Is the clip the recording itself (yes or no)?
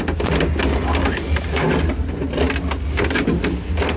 yes